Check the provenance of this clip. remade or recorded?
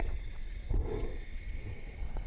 remade